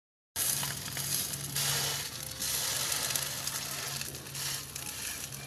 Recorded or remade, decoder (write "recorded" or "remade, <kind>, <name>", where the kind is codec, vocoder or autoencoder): recorded